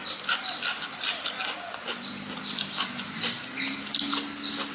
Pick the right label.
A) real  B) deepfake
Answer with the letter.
A